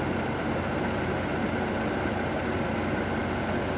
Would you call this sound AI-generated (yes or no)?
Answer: no